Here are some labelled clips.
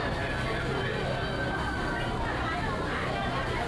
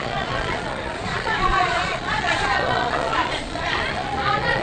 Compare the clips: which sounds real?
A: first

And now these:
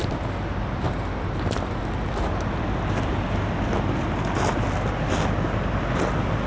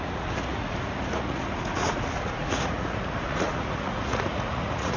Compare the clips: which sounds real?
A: first